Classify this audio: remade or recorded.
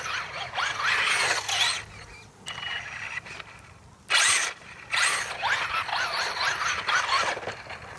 recorded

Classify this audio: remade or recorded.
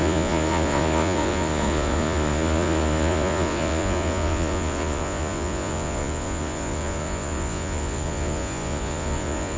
remade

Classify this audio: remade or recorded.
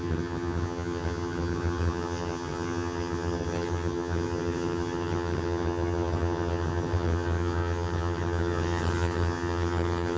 remade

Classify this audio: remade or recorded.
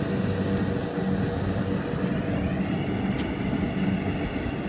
recorded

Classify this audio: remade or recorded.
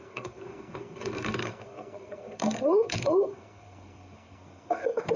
remade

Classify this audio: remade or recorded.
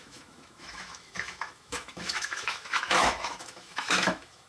remade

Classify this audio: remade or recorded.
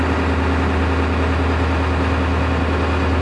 recorded